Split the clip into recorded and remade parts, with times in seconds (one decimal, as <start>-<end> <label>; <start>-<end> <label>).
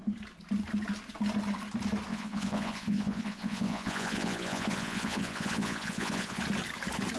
0.0-2.1 recorded; 2.1-6.4 remade; 6.4-7.2 recorded